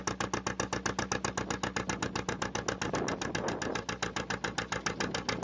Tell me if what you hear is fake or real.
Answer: real